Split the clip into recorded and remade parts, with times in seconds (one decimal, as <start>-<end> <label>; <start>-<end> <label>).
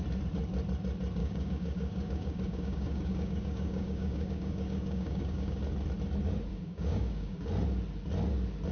0.0-1.2 recorded; 1.2-5.6 remade; 5.6-6.5 recorded; 6.5-7.5 remade; 7.5-8.7 recorded